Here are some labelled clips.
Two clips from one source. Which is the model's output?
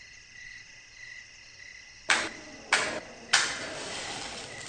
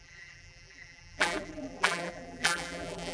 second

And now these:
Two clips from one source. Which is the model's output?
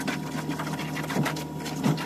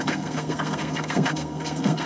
second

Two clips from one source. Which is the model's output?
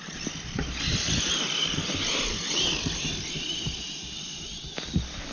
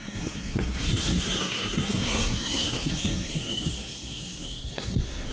second